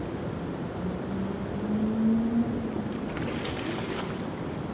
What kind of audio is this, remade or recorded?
recorded